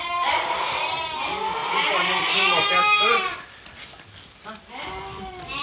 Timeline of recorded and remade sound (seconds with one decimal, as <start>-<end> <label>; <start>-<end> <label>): 0.0-5.6 recorded